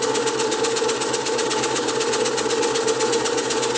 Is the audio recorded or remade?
recorded